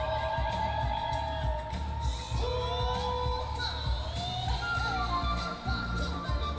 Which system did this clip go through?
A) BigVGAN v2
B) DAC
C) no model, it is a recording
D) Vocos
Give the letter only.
C